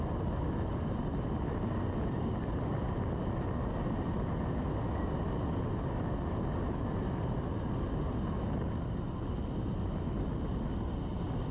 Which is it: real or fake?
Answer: real